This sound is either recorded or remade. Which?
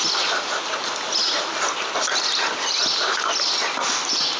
recorded